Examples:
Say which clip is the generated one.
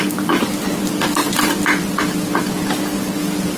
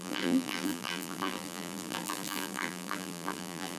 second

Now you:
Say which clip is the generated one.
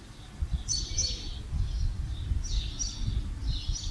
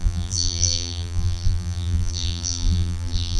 second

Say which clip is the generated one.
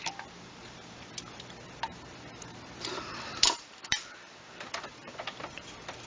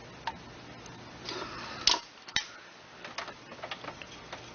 first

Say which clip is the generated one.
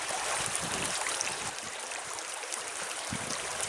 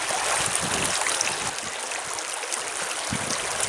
first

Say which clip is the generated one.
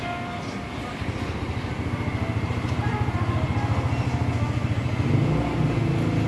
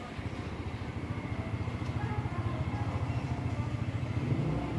second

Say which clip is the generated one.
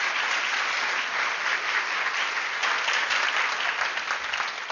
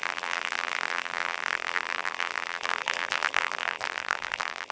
second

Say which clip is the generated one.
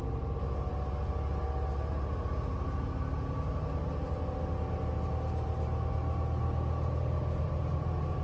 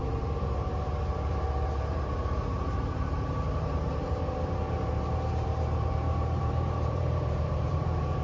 second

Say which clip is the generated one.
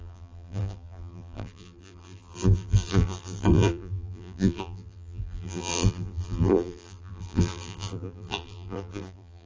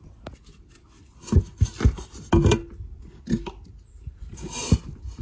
first